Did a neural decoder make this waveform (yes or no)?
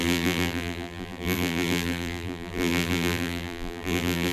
yes